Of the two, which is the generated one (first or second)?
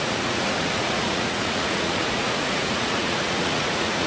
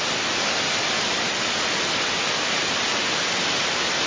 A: first